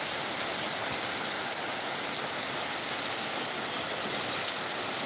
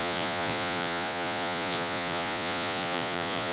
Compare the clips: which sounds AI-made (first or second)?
second